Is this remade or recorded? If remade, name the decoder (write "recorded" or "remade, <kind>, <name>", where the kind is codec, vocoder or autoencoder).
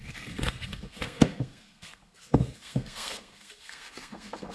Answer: remade, codec, SNAC